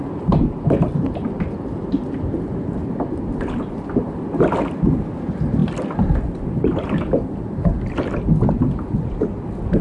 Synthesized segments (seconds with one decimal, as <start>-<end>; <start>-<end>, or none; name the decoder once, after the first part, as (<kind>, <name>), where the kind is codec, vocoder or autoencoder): none